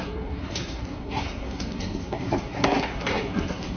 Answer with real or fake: fake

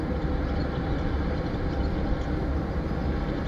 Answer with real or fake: real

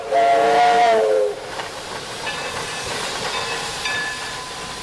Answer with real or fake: fake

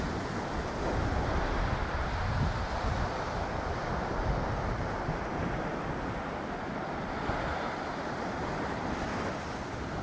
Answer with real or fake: real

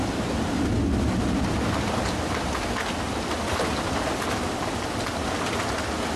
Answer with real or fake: real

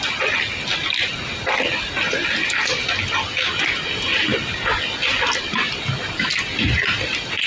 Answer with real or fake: real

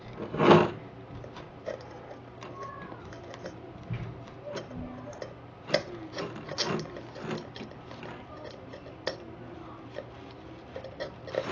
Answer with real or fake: real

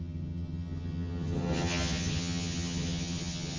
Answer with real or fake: fake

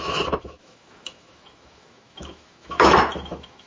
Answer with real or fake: fake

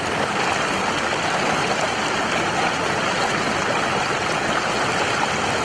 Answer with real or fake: real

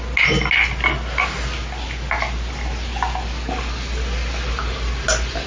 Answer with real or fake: real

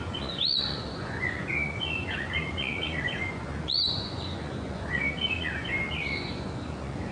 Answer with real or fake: fake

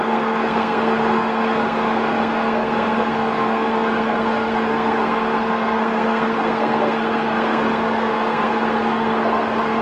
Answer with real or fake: fake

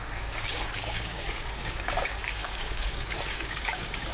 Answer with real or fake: fake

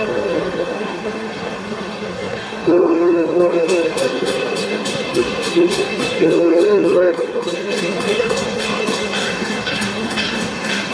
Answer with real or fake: fake